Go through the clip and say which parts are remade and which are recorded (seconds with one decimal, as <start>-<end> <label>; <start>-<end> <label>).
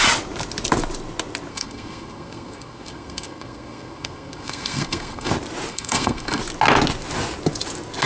0.0-1.5 recorded; 1.5-5.3 remade; 5.3-5.7 recorded; 5.7-6.4 remade; 6.4-8.1 recorded